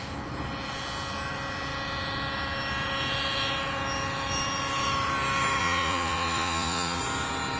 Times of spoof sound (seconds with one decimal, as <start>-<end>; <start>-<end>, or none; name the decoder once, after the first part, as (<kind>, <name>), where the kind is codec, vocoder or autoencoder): 5.6-7.0 (vocoder, Vocos)